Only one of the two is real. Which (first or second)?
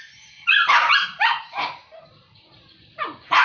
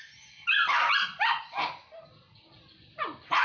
second